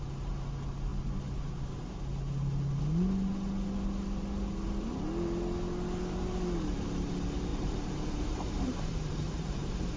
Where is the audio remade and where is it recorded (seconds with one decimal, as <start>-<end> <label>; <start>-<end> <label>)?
0.0-7.5 recorded; 7.5-9.5 remade; 9.5-10.0 recorded